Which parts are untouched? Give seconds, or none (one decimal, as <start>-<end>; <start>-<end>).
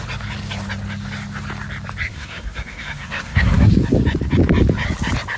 0.0-2.1; 3.7-5.4